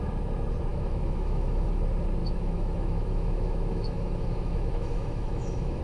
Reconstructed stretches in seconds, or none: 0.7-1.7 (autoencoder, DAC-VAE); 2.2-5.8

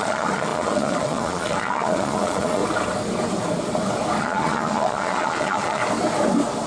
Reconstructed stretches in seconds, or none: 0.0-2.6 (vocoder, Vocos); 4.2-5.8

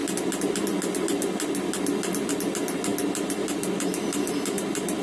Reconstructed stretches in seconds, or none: none